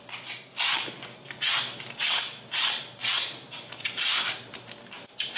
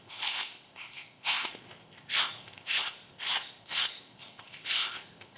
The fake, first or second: second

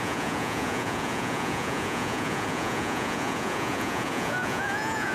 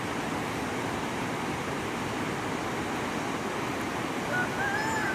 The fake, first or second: first